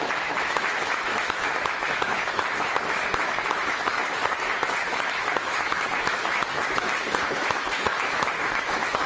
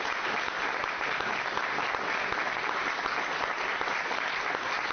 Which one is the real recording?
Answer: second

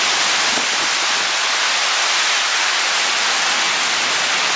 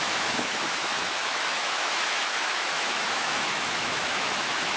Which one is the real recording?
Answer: first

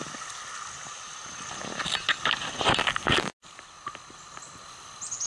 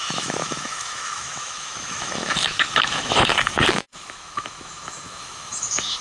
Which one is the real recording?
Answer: first